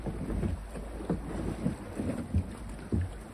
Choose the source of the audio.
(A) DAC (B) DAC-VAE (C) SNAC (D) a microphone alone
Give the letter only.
D